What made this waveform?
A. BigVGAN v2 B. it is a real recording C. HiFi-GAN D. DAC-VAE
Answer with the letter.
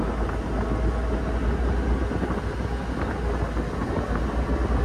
B